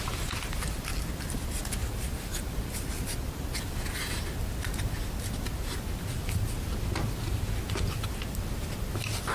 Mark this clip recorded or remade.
recorded